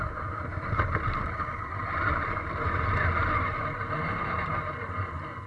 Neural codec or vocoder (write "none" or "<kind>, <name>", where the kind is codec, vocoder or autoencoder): none